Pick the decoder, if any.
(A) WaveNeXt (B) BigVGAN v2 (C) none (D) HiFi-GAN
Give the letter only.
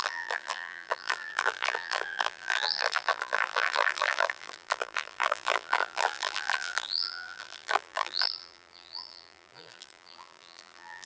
B